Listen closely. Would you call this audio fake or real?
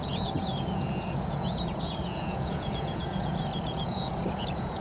fake